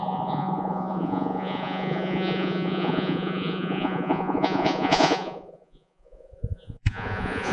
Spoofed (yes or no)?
yes